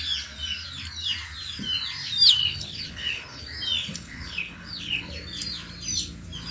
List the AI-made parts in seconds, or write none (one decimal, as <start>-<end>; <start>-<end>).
2.4-3.4; 3.8-5.1

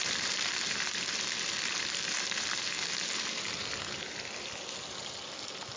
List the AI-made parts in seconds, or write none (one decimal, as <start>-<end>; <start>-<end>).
0.0-5.8

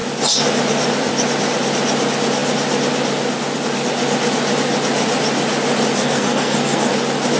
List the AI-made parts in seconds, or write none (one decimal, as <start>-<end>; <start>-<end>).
5.9-6.9

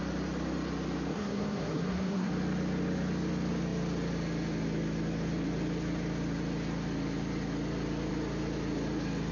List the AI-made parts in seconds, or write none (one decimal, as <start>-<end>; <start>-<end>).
1.1-2.3

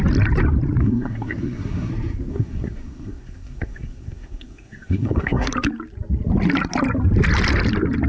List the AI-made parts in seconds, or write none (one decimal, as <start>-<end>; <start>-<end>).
0.8-1.9; 2.3-5.5

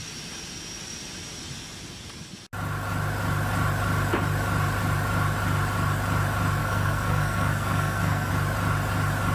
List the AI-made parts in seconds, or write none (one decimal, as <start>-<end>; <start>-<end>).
6.6-8.3